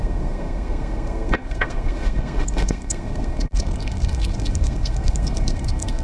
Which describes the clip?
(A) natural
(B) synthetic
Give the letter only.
B